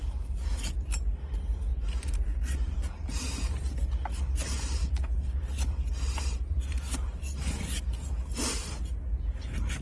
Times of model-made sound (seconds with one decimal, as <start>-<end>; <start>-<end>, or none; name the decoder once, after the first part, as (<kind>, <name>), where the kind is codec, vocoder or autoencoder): 1.7-3.6 (vocoder, BigVGAN v2); 4.8-7.3